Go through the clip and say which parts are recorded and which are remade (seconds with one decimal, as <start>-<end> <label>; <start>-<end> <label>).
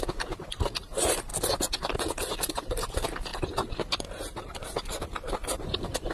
0.0-1.3 remade; 1.3-2.5 recorded; 2.5-3.3 remade; 3.3-5.3 recorded; 5.3-6.1 remade